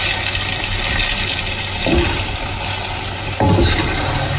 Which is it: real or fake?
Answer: real